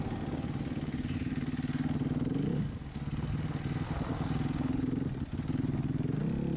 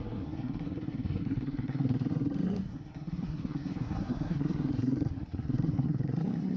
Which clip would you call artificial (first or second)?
second